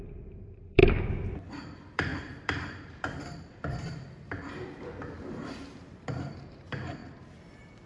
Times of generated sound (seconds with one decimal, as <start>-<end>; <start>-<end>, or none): 0.0-0.8; 1.5-7.0